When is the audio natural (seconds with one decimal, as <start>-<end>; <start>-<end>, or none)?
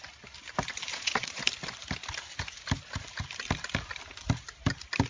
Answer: 0.0-0.9; 1.4-5.1